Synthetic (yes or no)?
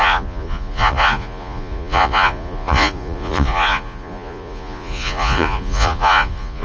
yes